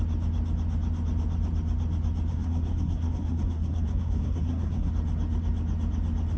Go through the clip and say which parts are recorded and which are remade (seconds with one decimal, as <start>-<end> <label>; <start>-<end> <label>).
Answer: 0.0-2.3 recorded; 2.3-4.9 remade; 4.9-6.4 recorded